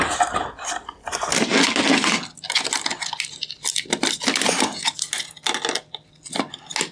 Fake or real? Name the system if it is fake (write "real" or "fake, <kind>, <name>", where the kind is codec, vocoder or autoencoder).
real